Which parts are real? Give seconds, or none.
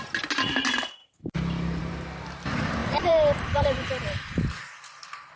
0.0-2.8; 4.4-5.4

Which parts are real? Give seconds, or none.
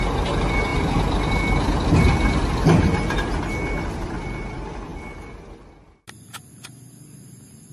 0.0-7.7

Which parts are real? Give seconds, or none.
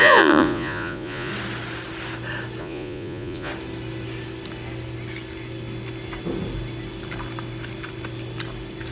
1.3-2.6; 3.5-8.9